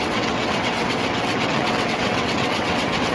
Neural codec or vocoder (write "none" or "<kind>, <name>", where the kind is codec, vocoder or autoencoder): vocoder, WaveNeXt